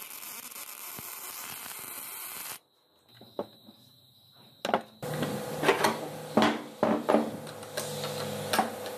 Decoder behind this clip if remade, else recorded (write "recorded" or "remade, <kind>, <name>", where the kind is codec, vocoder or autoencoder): recorded